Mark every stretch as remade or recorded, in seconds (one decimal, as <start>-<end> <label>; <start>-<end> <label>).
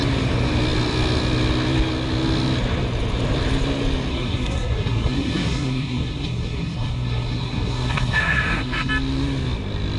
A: 0.0-4.1 recorded; 4.1-8.9 remade; 8.9-10.0 recorded